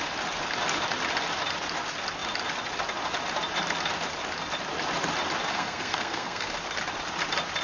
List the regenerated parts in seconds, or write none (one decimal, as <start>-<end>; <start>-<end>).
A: 5.5-6.5